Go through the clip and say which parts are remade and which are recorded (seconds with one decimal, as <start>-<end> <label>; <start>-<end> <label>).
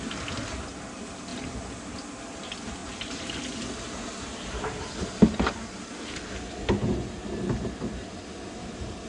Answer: 0.0-9.1 recorded